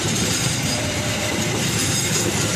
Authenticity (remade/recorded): remade